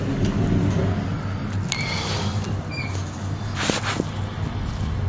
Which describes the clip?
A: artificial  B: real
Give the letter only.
B